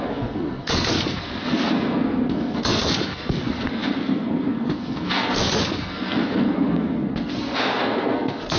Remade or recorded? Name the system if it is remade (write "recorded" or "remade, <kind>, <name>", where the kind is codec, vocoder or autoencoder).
remade, codec, SNAC